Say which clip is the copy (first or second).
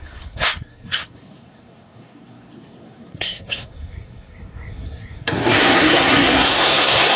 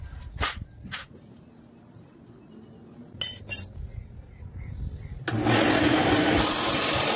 first